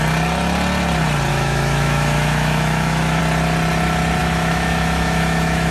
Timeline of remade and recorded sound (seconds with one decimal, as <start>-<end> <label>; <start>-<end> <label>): 0.0-1.3 recorded; 1.3-3.2 remade; 3.2-4.2 recorded; 4.2-5.7 remade